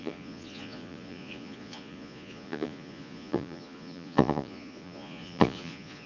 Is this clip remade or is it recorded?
remade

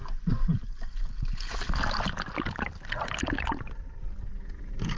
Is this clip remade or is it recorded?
recorded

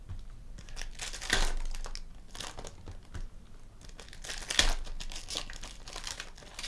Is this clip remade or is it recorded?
recorded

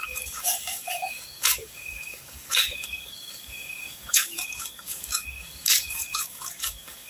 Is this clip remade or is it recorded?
remade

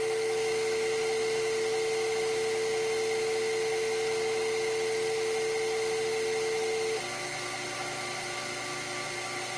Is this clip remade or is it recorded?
recorded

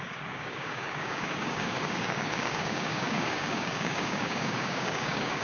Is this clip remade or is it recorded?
remade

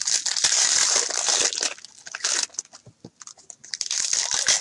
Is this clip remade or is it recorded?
recorded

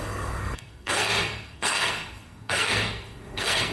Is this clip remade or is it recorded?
remade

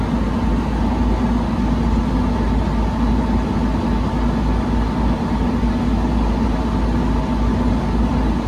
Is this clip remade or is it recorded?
recorded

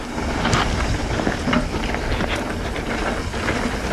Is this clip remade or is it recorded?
recorded